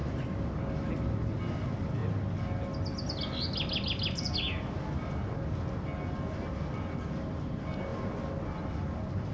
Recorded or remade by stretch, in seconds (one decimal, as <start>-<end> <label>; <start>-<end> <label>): 0.0-9.3 recorded

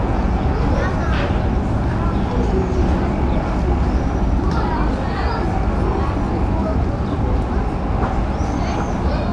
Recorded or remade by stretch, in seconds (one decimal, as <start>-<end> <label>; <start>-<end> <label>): 0.0-0.5 remade; 0.5-9.3 recorded